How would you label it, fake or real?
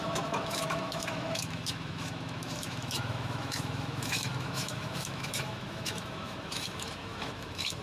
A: fake